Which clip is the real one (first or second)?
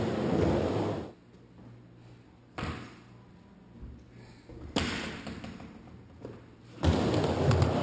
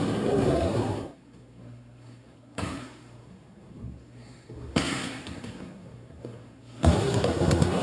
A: first